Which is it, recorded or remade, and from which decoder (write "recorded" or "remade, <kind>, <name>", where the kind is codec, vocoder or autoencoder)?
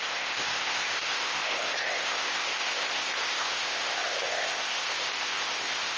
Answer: remade, codec, ZipCodec